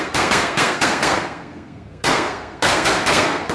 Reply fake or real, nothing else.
fake